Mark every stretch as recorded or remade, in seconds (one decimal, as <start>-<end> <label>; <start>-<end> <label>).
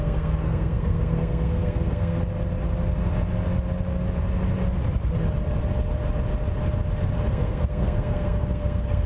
0.0-2.2 remade; 2.2-7.3 recorded; 7.3-9.1 remade